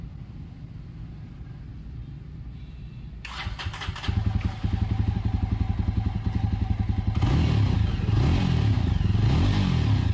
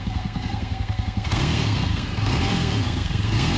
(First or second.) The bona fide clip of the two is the first